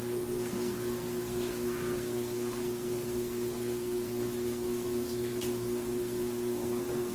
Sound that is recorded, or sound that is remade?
remade